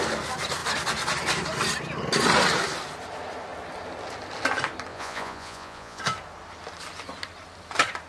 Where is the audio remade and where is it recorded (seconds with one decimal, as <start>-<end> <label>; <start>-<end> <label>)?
0.0-4.9 recorded; 4.9-6.0 remade; 6.0-8.1 recorded